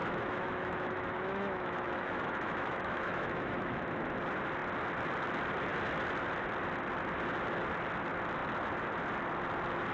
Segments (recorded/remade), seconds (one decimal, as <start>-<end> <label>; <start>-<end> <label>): 0.0-4.1 remade; 4.1-9.9 recorded